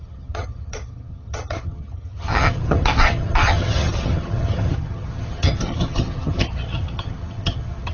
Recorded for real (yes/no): no